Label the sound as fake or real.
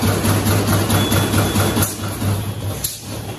real